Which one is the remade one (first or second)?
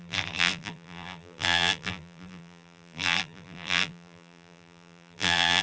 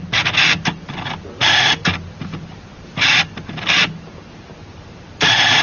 first